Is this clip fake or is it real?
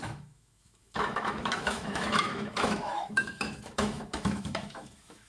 fake